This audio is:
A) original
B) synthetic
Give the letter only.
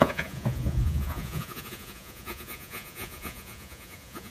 B